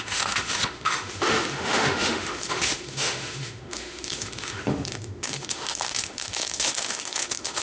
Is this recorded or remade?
remade